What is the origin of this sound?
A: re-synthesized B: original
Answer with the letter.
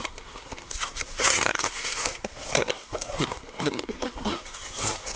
A